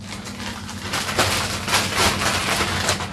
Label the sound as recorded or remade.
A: recorded